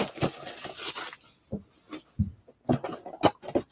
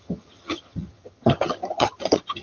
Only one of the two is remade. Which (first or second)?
second